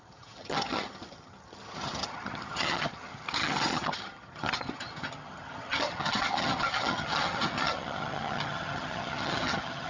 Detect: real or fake fake